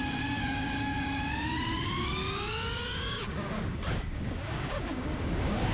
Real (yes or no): no